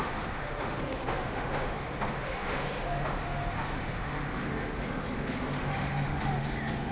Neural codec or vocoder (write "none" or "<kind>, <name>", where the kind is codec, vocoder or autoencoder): autoencoder, DAC-VAE